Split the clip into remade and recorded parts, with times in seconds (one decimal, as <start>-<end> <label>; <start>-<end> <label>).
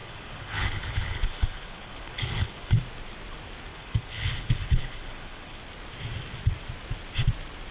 0.0-2.8 remade; 2.8-3.7 recorded; 3.7-5.6 remade; 5.6-7.7 recorded